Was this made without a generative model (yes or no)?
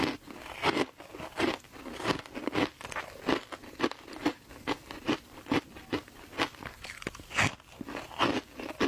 yes